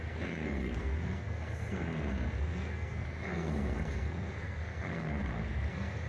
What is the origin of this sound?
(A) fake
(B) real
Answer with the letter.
A